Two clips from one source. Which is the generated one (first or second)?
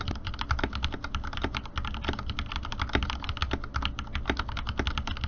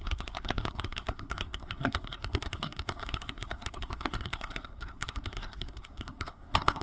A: second